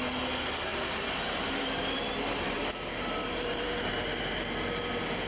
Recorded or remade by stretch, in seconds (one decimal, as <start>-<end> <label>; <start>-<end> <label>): 0.0-0.7 recorded; 0.7-3.9 remade; 3.9-5.3 recorded